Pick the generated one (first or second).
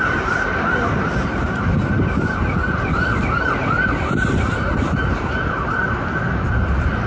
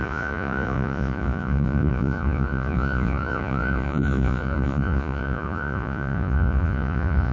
second